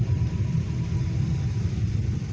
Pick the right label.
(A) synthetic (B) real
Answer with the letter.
B